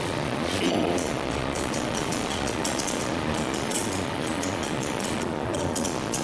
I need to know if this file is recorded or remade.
remade